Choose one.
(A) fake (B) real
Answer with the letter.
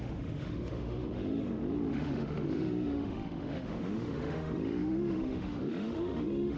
A